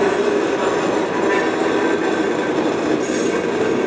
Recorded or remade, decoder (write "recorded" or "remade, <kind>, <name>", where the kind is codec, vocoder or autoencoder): recorded